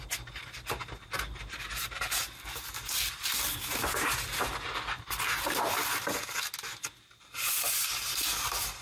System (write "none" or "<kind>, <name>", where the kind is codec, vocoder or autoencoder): none